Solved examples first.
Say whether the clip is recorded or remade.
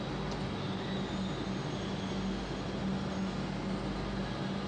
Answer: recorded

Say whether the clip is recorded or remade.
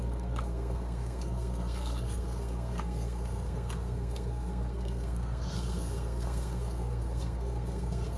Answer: remade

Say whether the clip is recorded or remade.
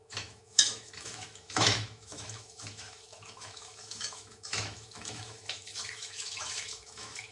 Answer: remade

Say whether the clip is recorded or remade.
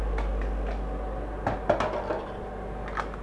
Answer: recorded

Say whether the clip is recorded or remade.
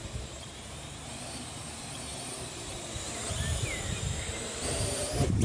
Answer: remade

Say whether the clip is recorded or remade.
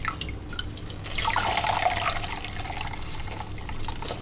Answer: recorded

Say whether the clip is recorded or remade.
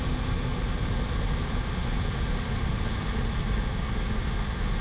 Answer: recorded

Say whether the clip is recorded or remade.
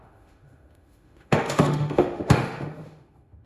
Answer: remade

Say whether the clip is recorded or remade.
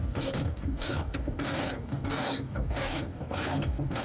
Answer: remade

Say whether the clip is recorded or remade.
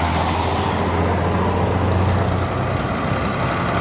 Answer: recorded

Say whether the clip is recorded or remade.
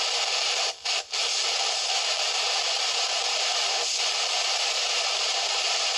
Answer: remade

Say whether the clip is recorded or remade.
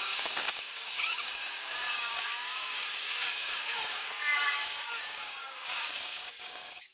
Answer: remade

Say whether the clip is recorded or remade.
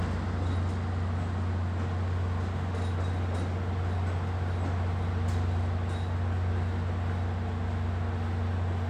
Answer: recorded